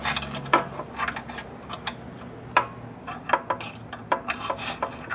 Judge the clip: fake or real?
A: real